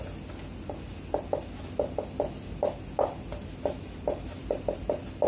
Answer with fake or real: real